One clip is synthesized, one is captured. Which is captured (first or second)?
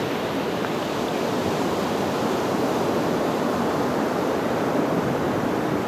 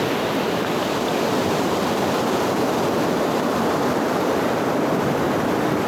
first